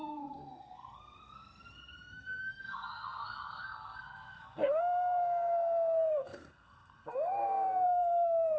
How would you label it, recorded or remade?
remade